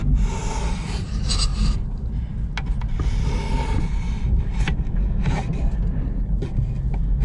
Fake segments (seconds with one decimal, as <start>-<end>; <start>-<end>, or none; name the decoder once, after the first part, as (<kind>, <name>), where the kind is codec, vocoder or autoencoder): none